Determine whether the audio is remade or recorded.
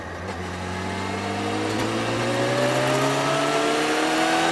recorded